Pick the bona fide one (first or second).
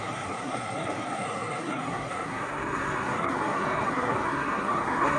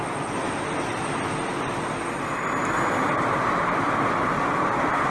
second